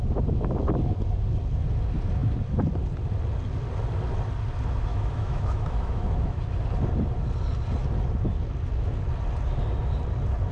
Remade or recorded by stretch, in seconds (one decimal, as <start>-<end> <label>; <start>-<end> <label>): 0.0-4.9 recorded; 4.9-6.4 remade; 6.4-10.5 recorded